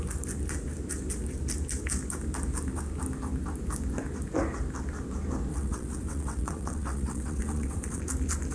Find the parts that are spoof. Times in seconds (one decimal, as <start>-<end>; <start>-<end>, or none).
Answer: 5.5-8.0